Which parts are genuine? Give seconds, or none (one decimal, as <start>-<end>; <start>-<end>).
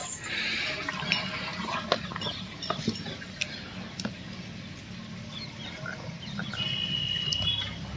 0.0-8.0